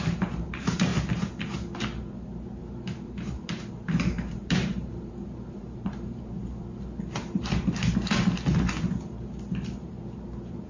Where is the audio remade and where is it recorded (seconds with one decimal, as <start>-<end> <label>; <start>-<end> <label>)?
0.0-0.9 remade; 0.9-2.6 recorded; 2.6-6.3 remade; 6.3-10.7 recorded